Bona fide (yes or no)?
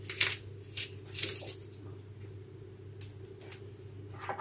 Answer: yes